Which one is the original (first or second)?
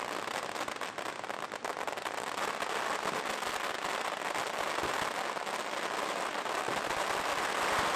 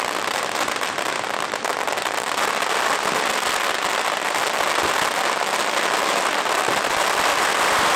first